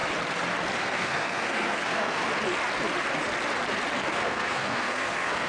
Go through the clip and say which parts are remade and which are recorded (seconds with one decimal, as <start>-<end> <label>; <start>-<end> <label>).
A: 0.0-0.8 recorded; 0.8-2.2 remade; 2.2-4.1 recorded; 4.1-5.5 remade